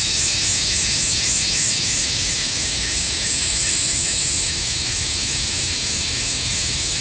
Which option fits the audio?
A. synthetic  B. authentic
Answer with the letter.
A